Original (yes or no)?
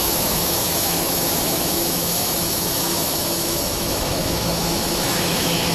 no